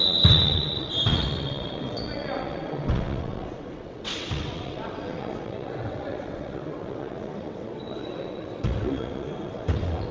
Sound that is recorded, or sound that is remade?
remade